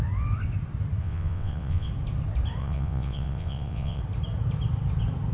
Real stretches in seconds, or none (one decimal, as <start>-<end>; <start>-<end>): 0.0-1.0; 1.9-2.6; 4.0-5.3